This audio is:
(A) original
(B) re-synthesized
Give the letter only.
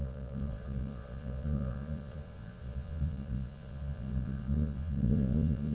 B